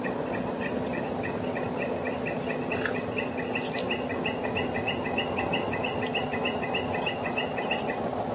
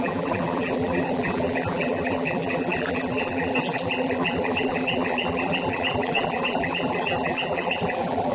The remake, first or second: second